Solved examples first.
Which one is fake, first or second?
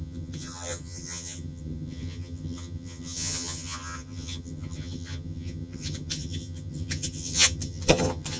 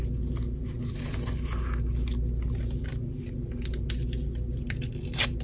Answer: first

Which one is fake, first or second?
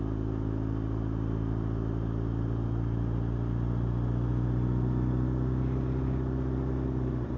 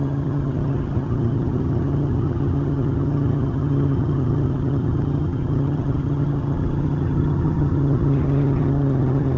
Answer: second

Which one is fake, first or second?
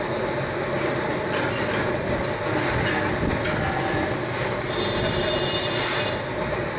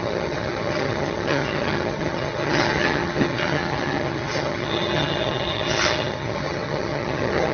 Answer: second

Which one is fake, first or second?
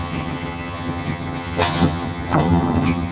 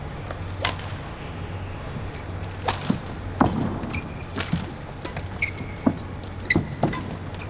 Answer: first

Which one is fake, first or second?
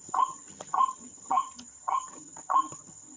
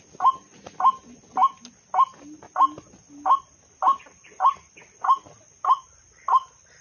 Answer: first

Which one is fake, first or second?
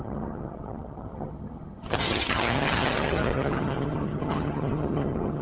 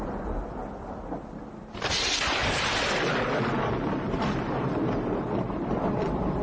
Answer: first